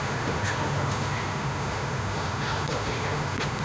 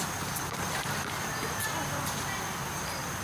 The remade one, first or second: first